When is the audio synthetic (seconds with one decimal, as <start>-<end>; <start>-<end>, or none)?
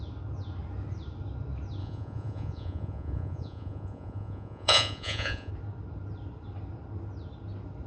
1.8-5.5